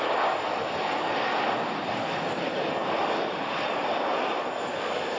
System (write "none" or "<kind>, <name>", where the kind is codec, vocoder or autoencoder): none